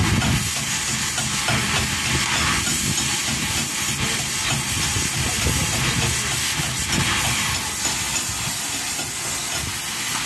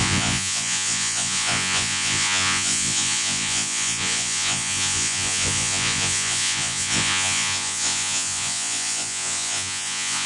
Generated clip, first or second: second